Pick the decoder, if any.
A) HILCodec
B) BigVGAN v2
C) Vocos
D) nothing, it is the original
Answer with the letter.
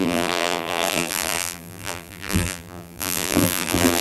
B